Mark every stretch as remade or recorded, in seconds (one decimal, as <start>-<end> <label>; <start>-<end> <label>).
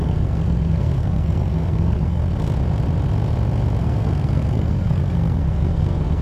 0.0-2.2 remade; 2.2-3.8 recorded; 3.8-6.2 remade